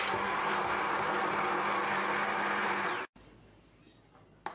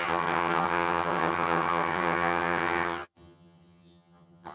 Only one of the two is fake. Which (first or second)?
second